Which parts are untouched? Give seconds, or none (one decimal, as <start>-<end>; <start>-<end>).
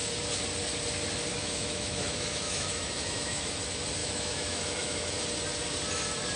0.0-1.3; 3.5-4.0; 5.1-6.4